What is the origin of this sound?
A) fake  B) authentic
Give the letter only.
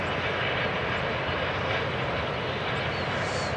B